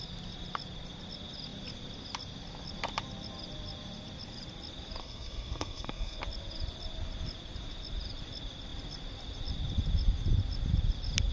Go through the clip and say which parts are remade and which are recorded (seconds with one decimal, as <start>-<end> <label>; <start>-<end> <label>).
0.0-5.0 recorded; 5.0-6.2 remade; 6.2-11.3 recorded

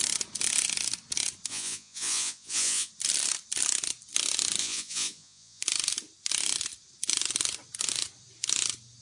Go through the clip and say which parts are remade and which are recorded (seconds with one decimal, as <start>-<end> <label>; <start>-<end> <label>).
0.0-1.5 recorded; 1.5-2.9 remade; 2.9-4.6 recorded; 4.6-5.6 remade; 5.6-9.0 recorded

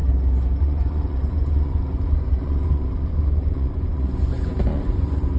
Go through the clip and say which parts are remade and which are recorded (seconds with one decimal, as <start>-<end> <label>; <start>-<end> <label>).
0.0-0.6 recorded; 0.6-5.4 remade

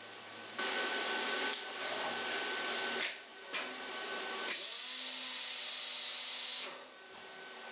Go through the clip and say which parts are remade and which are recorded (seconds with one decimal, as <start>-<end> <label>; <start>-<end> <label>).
0.0-7.7 recorded

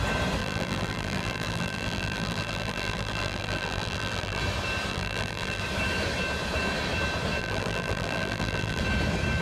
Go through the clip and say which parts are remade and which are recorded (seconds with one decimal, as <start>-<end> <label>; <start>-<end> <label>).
0.0-0.4 recorded; 0.4-4.4 remade; 4.4-4.9 recorded; 4.9-5.6 remade; 5.6-7.4 recorded; 7.4-8.8 remade; 8.8-9.4 recorded

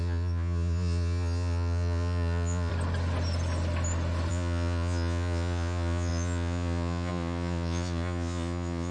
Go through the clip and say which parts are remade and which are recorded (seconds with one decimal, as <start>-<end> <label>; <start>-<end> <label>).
0.0-2.7 remade; 2.7-4.3 recorded; 4.3-8.9 remade